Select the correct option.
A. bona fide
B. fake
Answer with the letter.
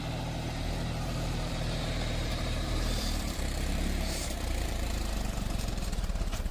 B